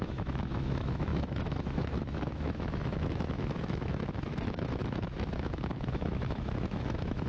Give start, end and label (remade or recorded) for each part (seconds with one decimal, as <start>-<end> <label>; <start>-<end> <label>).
0.0-7.3 remade